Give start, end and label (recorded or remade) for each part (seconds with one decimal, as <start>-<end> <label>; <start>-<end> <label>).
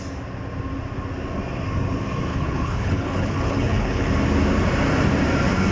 0.0-2.3 recorded; 2.3-4.1 remade; 4.1-5.7 recorded